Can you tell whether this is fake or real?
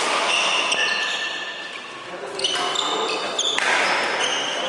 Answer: real